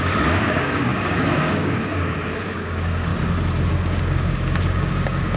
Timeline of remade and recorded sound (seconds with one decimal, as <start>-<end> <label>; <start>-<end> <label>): 0.0-3.1 remade; 3.1-3.7 recorded; 3.7-5.4 remade